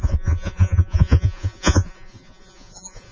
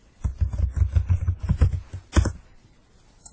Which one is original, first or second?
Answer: second